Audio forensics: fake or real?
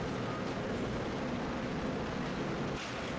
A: real